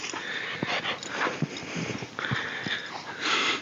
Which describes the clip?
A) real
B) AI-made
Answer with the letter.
A